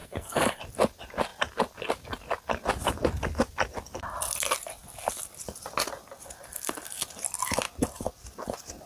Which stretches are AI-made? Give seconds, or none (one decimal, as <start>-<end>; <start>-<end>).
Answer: 0.0-0.6